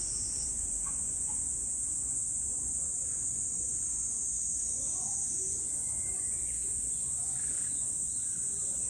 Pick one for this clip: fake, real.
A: fake